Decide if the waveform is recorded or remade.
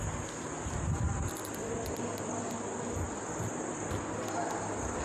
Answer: recorded